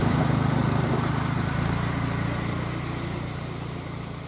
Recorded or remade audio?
remade